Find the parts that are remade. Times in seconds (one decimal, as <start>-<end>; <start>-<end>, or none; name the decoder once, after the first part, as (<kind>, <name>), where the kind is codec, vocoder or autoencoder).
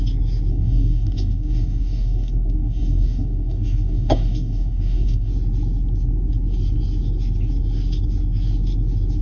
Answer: 0.5-5.3 (codec, DAC)